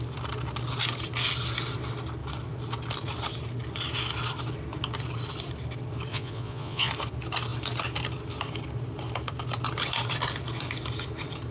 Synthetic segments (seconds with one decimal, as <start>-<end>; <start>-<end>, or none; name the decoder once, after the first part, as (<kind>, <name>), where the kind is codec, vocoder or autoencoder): 6.1-6.9 (vocoder, Vocos)